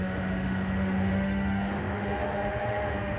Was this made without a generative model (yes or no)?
no